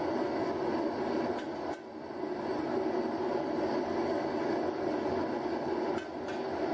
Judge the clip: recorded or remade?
recorded